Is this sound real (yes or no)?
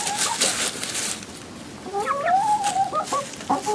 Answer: yes